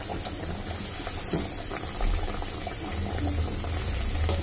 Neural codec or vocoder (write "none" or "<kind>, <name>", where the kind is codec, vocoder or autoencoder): none